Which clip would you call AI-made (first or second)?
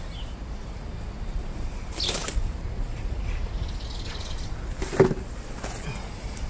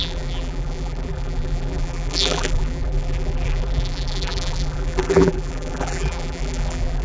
second